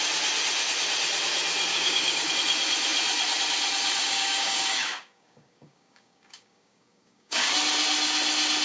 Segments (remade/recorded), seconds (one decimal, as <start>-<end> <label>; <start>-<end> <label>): 0.0-1.7 recorded; 1.7-2.3 remade; 2.3-4.0 recorded; 4.0-7.5 remade; 7.5-8.6 recorded